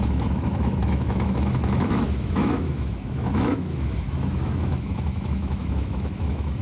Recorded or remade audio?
remade